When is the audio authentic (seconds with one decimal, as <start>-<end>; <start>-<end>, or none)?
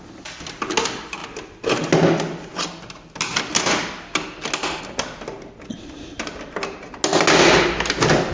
0.0-8.3